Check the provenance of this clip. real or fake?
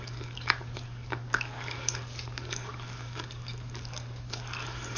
fake